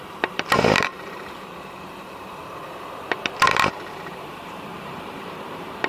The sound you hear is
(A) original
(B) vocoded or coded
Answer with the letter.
B